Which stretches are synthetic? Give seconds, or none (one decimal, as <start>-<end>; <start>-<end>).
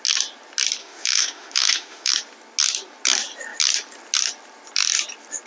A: 0.8-2.1